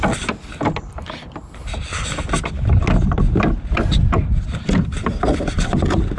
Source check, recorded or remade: recorded